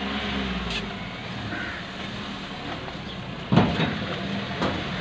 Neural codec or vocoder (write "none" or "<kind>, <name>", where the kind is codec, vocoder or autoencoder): none